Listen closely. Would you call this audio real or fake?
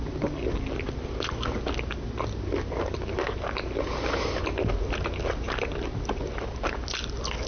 real